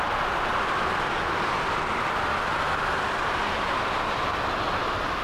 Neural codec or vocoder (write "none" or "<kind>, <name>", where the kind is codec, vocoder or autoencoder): vocoder, BigVGAN v2